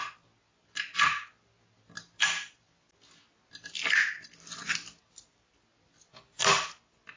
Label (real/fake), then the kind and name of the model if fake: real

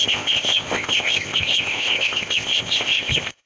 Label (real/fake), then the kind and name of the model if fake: fake, codec, ZipCodec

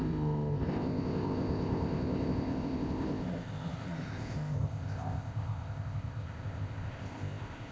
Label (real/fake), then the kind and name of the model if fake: fake, codec, ZipCodec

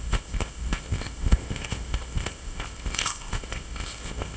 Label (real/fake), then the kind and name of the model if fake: fake, codec, ZipCodec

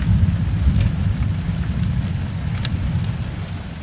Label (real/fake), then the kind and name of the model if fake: real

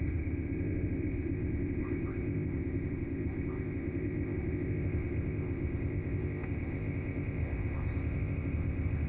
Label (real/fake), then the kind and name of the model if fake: fake, codec, ZipCodec